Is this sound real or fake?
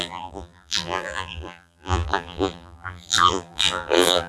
fake